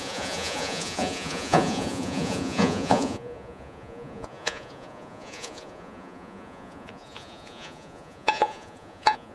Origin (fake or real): fake